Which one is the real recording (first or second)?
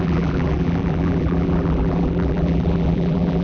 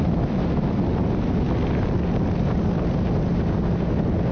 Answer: second